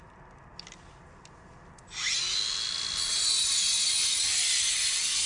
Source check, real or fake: real